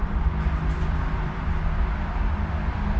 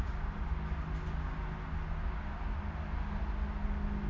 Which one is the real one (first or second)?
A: second